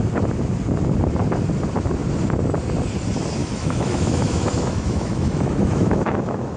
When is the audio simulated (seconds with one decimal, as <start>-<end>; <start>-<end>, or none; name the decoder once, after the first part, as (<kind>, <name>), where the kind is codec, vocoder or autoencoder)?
3.4-6.6 (autoencoder, DAC-VAE)